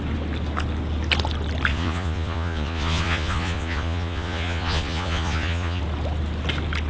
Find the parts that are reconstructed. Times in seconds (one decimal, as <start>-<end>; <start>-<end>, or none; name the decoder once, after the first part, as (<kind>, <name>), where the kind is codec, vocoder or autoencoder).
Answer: 1.7-5.8 (vocoder, Vocos)